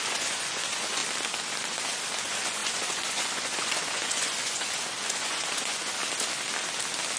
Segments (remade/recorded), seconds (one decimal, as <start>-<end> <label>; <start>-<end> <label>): 0.0-1.0 remade; 1.0-2.2 recorded; 2.2-6.0 remade; 6.0-7.2 recorded